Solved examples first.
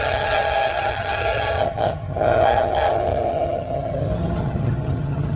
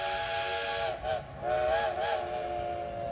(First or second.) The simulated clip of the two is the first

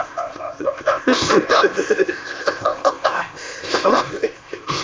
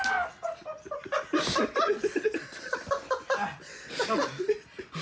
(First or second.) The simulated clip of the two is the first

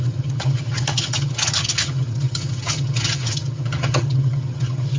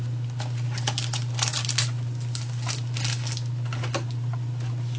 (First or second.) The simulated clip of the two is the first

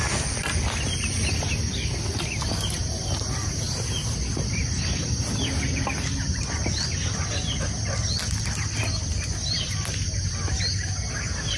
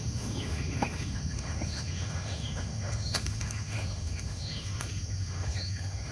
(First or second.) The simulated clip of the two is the second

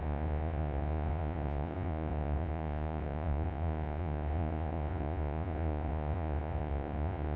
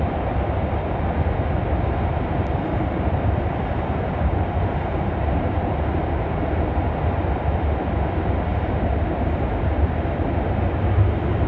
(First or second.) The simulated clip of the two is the first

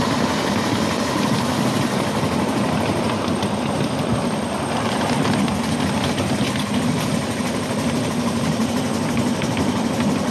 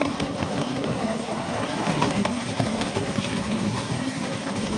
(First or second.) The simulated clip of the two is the second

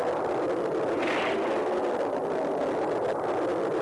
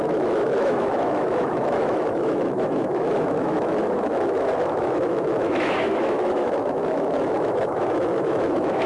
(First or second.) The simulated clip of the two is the second